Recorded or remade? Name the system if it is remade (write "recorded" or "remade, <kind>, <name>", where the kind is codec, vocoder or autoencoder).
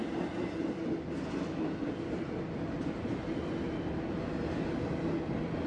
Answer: recorded